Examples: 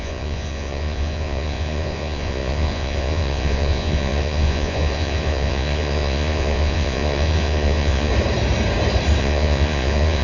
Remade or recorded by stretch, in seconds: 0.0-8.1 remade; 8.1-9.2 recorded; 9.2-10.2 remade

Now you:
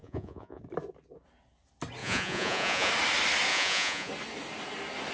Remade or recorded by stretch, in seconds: 0.0-0.6 remade; 0.6-2.0 recorded; 2.0-2.9 remade; 2.9-3.5 recorded; 3.5-4.1 remade; 4.1-5.1 recorded

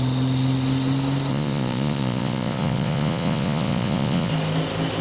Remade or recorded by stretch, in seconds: 0.0-1.3 recorded; 1.3-4.3 remade; 4.3-5.0 recorded

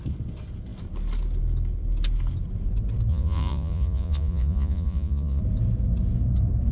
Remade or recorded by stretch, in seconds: 0.0-3.1 recorded; 3.1-5.4 remade; 5.4-6.7 recorded

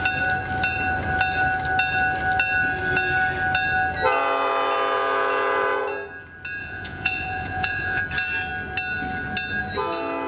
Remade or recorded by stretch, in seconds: 0.0-6.6 recorded; 6.6-8.0 remade; 8.0-10.3 recorded

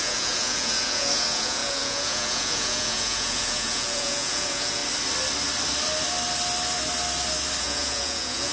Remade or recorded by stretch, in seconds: 0.0-4.8 remade; 4.8-7.6 recorded; 7.6-8.5 remade